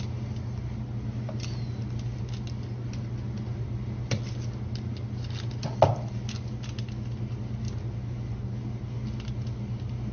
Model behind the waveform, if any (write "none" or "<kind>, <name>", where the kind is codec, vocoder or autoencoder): none